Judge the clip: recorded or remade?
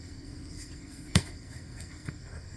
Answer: remade